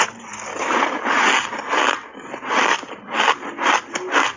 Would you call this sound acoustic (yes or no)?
yes